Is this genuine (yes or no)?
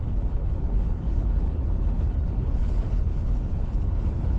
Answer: no